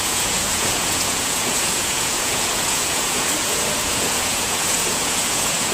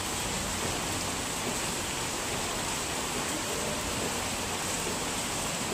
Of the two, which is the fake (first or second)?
first